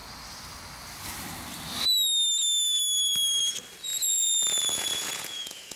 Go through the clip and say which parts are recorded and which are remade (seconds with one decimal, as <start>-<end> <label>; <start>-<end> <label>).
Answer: 0.0-3.9 recorded; 3.9-5.8 remade